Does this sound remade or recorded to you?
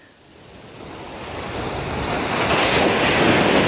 recorded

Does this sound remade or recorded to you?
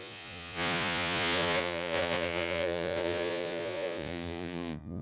remade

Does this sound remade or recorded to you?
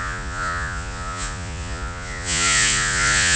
remade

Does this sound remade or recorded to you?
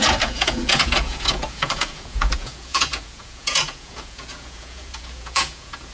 remade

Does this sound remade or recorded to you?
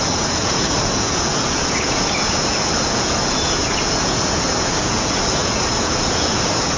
remade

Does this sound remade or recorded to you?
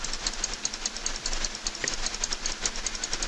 recorded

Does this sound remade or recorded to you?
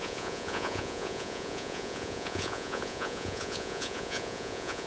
remade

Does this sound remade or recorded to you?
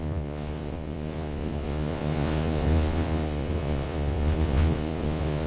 remade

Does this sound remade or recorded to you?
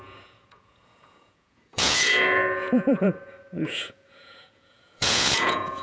remade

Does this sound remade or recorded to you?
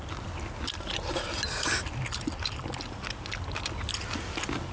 recorded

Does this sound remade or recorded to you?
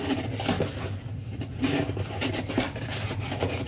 recorded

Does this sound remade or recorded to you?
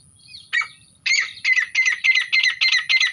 recorded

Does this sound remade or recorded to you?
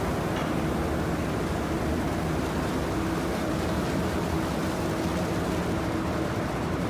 recorded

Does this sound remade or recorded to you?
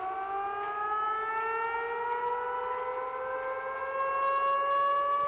recorded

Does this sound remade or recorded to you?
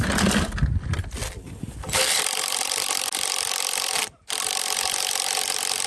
recorded